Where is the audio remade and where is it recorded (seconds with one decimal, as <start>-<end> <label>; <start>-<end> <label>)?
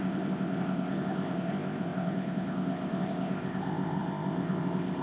0.0-5.0 remade